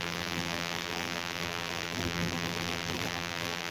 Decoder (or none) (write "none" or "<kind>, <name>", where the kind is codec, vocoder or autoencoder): vocoder, BigVGAN v2